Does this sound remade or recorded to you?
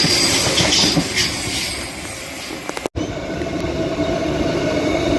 recorded